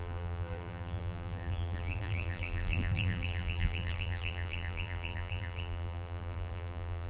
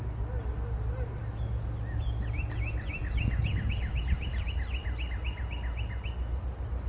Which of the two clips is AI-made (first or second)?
first